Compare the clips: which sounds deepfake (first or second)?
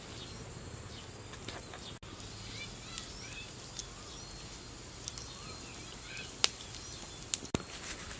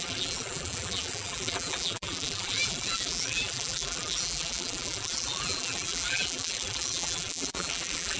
second